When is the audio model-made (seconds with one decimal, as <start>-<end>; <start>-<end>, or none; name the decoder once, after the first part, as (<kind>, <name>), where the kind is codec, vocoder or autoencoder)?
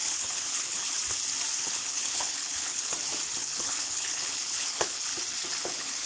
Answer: 0.0-1.0 (codec, HILCodec); 1.6-2.9; 3.4-5.1; 5.6-6.1